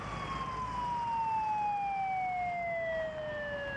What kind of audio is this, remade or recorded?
recorded